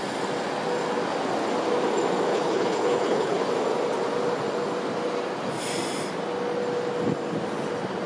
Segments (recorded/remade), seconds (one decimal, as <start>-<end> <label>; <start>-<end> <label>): 0.0-2.3 recorded; 2.3-3.4 remade; 3.4-8.1 recorded